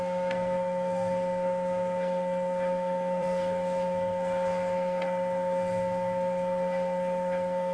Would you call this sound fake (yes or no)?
yes